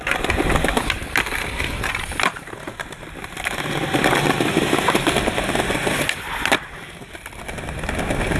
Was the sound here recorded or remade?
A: recorded